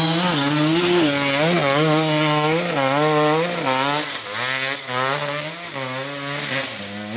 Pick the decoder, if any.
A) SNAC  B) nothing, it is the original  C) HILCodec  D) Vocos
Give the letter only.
B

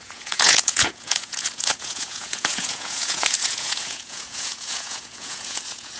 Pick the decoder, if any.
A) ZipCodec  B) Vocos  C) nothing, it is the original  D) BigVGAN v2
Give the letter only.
B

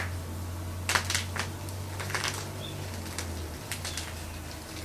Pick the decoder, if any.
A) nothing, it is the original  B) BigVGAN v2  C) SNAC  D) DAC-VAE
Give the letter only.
A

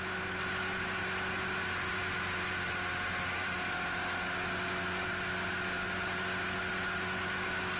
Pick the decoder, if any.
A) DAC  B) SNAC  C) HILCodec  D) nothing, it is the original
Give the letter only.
D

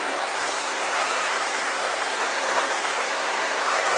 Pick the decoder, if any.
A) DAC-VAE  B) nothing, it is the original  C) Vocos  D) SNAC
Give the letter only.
D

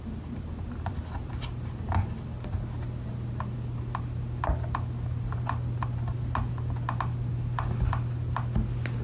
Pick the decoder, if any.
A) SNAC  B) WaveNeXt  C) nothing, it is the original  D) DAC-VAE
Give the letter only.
C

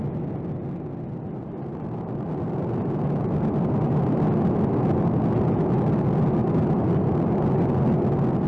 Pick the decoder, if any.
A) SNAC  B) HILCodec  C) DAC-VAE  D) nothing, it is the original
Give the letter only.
D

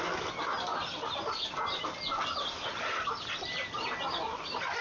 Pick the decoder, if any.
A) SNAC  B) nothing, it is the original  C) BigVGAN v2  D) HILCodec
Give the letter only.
B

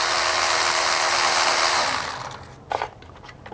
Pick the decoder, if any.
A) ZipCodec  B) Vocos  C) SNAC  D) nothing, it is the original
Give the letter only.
D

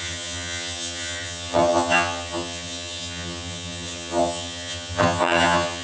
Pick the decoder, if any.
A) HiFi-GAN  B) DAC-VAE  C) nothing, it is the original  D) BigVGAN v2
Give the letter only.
A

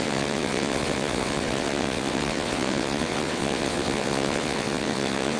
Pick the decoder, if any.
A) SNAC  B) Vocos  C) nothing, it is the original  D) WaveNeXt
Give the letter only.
D